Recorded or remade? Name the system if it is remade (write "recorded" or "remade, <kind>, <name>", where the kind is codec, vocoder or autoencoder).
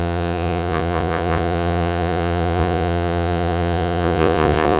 remade, vocoder, Vocos